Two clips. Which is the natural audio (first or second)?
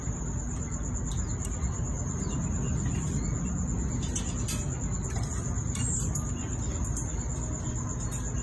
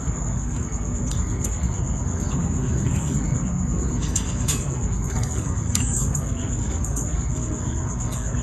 first